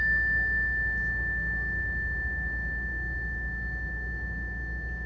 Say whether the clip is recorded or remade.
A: recorded